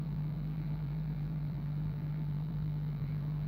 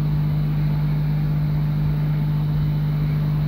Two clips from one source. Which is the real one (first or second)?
second